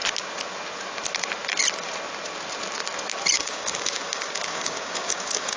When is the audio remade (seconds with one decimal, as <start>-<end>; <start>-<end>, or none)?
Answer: 3.3-5.6